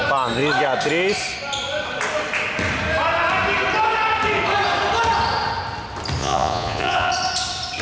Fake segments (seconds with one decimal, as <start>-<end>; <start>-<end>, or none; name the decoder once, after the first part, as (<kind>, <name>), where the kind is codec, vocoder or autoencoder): 6.2-7.1 (vocoder, Vocos)